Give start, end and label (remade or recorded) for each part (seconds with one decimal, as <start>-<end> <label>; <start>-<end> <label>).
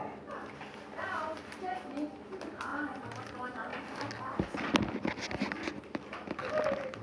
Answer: 0.0-7.0 recorded